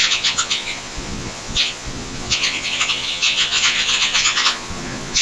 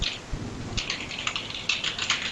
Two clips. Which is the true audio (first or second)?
second